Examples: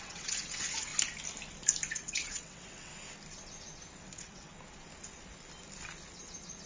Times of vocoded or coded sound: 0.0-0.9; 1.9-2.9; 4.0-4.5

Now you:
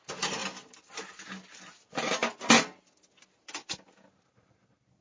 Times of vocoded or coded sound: none

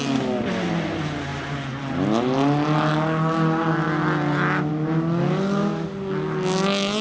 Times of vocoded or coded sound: none

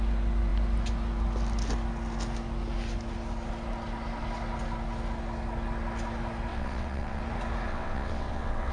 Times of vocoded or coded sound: 6.5-7.2; 7.7-8.7

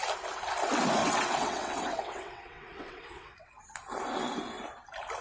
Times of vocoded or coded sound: 1.0-3.6

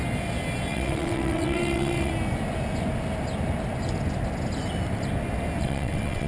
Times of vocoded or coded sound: 0.7-2.1; 5.6-6.3

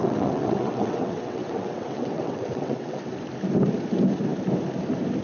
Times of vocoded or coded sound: 0.0-3.1